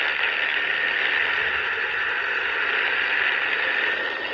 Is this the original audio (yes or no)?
yes